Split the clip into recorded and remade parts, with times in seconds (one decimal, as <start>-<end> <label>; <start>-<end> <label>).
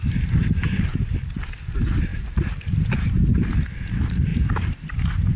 0.0-4.3 recorded; 4.3-5.4 remade